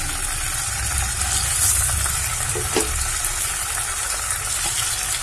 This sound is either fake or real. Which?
real